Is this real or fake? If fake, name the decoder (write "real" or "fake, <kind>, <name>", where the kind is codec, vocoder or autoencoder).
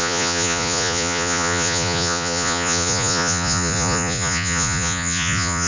fake, vocoder, Vocos